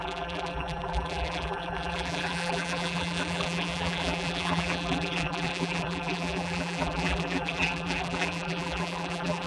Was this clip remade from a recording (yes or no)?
yes